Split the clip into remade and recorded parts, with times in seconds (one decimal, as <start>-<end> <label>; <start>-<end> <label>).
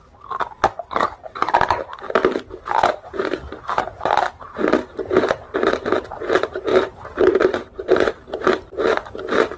0.0-6.7 recorded; 6.7-8.1 remade; 8.1-9.6 recorded